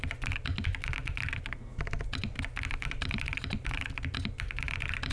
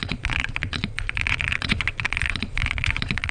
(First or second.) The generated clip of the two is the second